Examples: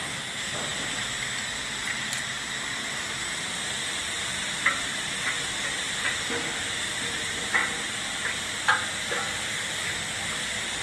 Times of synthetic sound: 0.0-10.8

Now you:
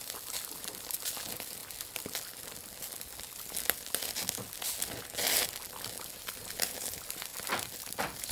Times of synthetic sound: 0.0-1.6; 6.2-7.3

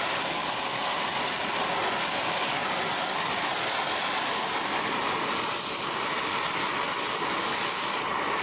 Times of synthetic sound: 0.4-1.4

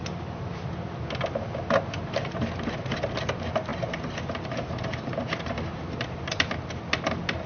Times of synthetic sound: 0.0-0.7; 3.7-6.5

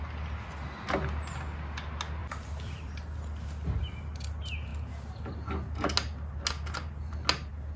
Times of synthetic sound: 2.2-4.0

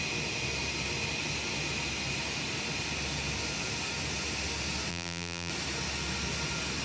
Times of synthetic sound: 4.9-5.5

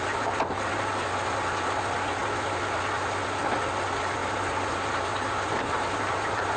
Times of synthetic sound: 4.2-6.6